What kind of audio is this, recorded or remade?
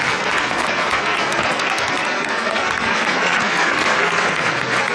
remade